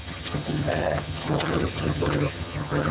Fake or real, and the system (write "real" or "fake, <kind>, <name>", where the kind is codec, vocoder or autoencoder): fake, vocoder, HiFi-GAN